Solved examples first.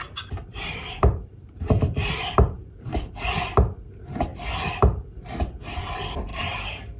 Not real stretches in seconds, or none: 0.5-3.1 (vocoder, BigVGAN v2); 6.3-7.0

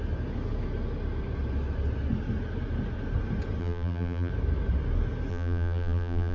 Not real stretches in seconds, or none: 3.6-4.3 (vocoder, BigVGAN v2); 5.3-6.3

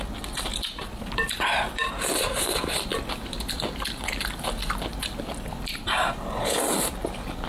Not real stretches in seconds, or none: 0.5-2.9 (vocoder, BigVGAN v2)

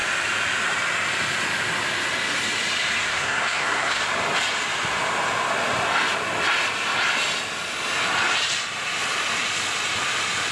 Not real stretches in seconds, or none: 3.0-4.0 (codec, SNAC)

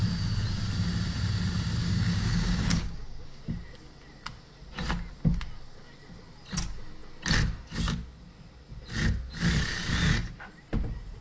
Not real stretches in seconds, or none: 1.8-3.4 (codec, DAC)

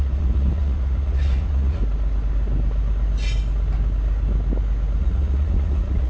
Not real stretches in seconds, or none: 0.0-1.8 (vocoder, Vocos); 5.0-6.1

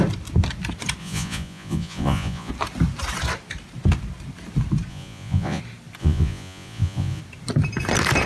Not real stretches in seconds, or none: 1.0-2.5 (vocoder, Vocos); 4.9-5.6; 6.0-7.2